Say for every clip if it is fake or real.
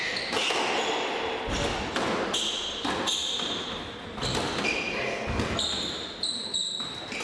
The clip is real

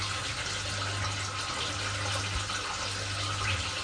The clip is real